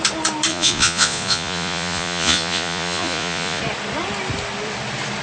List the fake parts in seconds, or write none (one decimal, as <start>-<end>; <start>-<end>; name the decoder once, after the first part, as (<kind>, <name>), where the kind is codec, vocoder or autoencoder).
0.5-3.6 (vocoder, Vocos)